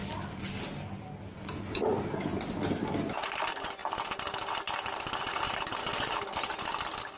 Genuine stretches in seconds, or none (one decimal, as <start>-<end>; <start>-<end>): 3.1-7.2